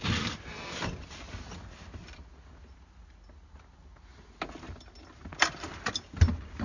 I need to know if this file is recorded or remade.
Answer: recorded